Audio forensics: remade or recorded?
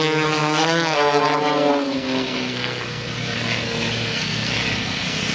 remade